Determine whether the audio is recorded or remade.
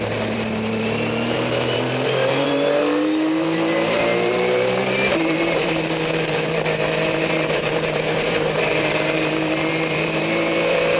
remade